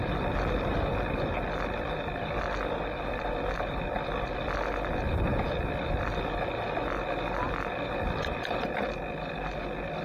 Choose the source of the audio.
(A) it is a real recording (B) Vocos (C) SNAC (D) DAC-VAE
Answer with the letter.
A